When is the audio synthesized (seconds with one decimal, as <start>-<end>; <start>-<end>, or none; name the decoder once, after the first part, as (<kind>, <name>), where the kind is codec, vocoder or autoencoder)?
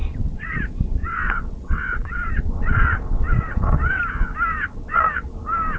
0.0-0.6 (vocoder, WaveNeXt); 1.0-4.0; 4.5-5.3